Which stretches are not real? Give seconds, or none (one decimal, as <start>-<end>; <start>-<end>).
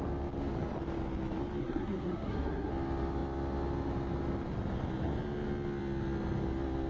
1.6-2.7